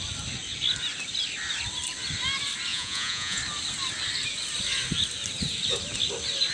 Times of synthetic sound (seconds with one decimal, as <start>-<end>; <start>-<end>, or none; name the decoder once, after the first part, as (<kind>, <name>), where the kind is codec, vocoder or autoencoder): 2.7-3.4 (vocoder, Vocos)